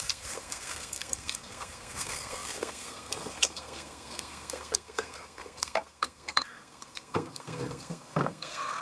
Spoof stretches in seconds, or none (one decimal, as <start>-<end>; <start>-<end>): 0.0-8.8